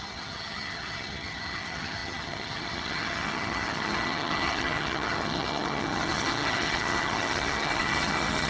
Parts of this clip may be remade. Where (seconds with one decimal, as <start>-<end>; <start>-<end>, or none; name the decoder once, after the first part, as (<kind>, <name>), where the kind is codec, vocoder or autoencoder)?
0.0-8.5 (vocoder, HiFi-GAN)